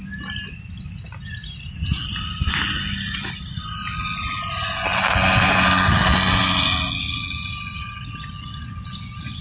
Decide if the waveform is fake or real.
real